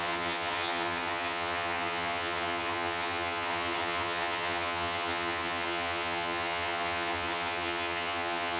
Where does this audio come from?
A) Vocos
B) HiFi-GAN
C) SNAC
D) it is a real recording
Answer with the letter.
B